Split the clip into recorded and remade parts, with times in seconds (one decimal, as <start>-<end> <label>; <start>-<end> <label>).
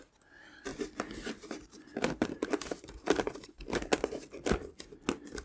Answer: 0.0-0.7 recorded; 0.7-3.9 remade; 3.9-5.4 recorded